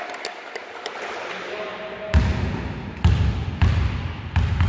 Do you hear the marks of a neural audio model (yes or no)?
no